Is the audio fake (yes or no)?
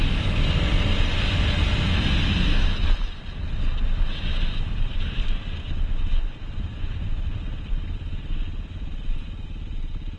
no